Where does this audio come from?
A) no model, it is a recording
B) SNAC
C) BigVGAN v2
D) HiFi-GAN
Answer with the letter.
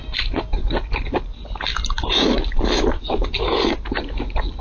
A